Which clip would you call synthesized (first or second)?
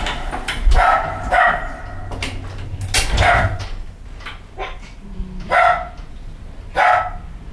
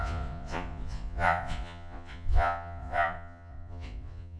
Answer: second